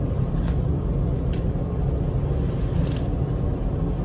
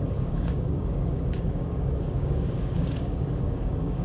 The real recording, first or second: first